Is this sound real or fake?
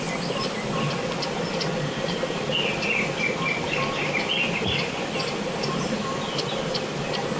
real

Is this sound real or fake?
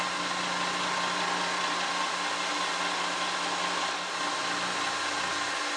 real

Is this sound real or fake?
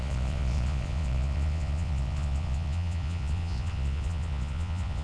fake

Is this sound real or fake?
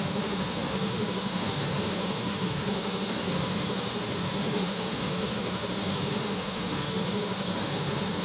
fake